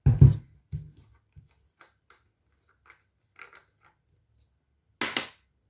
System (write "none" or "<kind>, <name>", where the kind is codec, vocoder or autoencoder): none